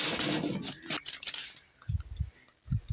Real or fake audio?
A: real